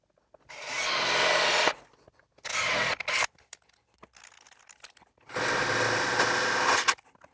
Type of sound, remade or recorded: recorded